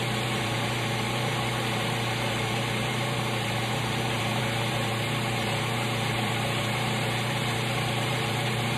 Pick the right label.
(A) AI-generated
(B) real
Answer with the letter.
A